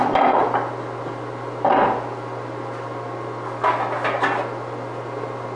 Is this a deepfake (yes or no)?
no